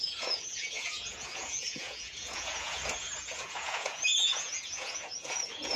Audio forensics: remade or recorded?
remade